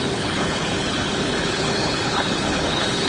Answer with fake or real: fake